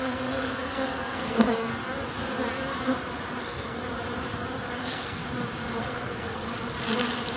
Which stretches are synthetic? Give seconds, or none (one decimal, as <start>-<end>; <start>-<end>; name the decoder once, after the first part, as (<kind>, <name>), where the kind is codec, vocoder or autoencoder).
0.0-1.7 (codec, SNAC); 3.4-3.8; 4.8-5.2; 5.8-6.5